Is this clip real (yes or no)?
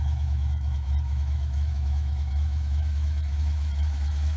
no